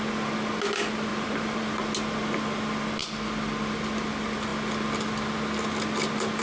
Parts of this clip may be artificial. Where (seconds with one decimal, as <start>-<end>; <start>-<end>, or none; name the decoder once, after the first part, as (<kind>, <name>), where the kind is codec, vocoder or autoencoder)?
1.1-1.6 (vocoder, BigVGAN v2)